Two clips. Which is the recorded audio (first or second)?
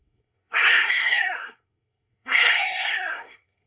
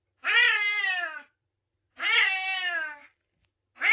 second